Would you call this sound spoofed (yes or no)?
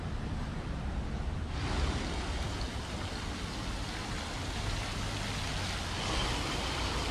no